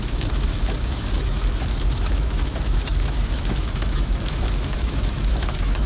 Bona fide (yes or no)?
no